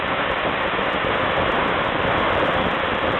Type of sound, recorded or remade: remade